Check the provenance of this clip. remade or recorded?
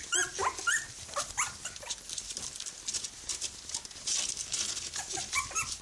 recorded